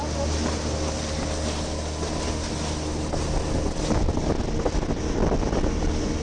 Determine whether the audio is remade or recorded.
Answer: recorded